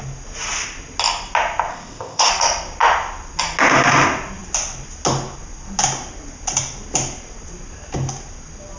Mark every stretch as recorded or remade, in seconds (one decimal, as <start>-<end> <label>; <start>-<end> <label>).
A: 0.0-1.7 recorded; 1.7-2.3 remade; 2.3-8.8 recorded